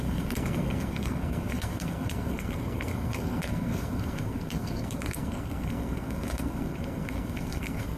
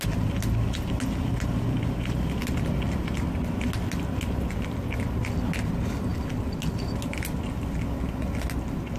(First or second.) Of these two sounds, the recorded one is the second